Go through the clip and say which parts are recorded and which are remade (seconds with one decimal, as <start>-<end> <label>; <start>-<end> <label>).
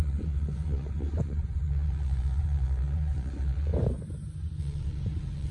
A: 0.0-3.7 remade; 3.7-4.6 recorded; 4.6-5.5 remade